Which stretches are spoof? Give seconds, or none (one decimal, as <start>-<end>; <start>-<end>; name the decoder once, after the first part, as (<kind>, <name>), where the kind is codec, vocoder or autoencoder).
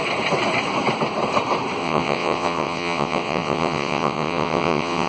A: 1.8-5.1 (vocoder, WaveNeXt)